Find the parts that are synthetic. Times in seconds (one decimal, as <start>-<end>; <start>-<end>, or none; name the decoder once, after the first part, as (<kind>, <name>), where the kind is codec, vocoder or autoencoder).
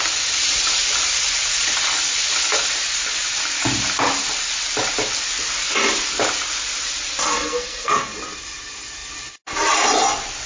7.2-8.1 (codec, SNAC)